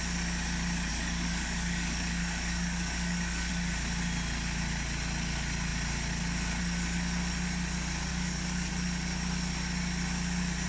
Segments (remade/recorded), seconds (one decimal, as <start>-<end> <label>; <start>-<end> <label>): 0.0-0.9 recorded; 0.9-3.5 remade; 3.5-8.1 recorded; 8.1-8.7 remade; 8.7-10.7 recorded

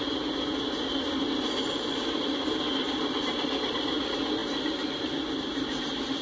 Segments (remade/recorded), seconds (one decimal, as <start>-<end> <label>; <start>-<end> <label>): 0.0-6.2 recorded

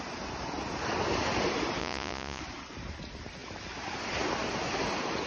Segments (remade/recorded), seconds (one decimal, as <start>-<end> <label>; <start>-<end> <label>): 0.0-1.8 recorded; 1.8-2.4 remade; 2.4-5.3 recorded

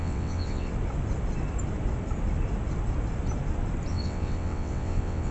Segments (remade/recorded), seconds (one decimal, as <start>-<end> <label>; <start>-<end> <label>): 0.0-0.7 remade; 0.7-3.9 recorded; 3.9-5.3 remade

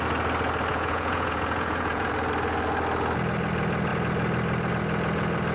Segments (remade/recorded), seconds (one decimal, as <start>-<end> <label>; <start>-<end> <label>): 0.0-0.7 recorded; 0.7-2.1 remade; 2.1-5.5 recorded

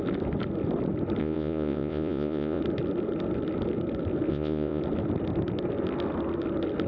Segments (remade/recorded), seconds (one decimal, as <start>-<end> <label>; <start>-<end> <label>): 0.0-1.2 recorded; 1.2-2.6 remade; 2.6-4.3 recorded; 4.3-4.8 remade; 4.8-6.9 recorded

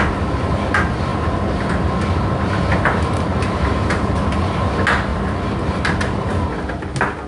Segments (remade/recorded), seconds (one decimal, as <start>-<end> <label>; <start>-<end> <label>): 0.0-3.3 recorded; 3.3-4.1 remade; 4.1-5.1 recorded; 5.1-5.8 remade; 5.8-7.3 recorded